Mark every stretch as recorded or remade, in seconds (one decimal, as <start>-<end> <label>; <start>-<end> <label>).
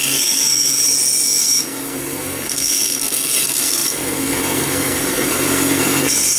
0.0-0.8 remade; 0.8-1.4 recorded; 1.4-6.4 remade